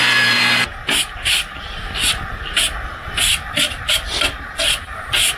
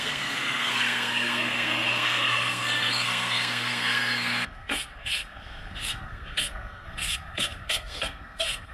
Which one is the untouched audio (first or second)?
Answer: first